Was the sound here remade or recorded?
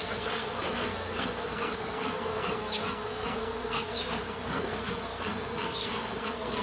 remade